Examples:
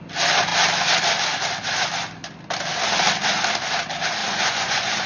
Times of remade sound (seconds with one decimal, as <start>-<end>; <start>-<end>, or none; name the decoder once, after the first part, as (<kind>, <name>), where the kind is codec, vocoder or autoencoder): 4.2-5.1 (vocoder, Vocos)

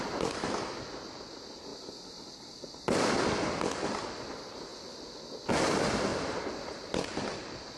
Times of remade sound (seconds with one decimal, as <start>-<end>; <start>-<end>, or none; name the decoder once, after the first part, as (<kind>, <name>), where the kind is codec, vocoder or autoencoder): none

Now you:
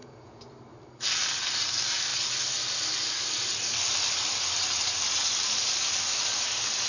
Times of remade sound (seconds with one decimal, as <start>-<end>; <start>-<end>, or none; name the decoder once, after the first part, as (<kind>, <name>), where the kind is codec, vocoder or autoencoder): 0.0-0.5 (vocoder, Vocos)